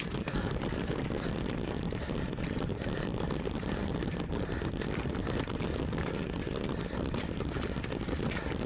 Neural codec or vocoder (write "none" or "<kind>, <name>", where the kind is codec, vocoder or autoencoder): none